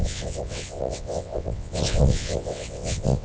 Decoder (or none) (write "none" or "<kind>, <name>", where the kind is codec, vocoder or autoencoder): vocoder, WaveNeXt